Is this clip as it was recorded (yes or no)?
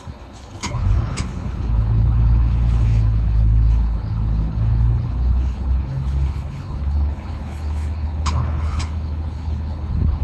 no